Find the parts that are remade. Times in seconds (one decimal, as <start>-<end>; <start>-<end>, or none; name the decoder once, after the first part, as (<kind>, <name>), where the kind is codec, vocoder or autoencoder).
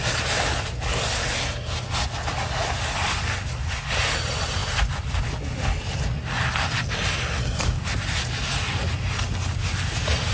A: none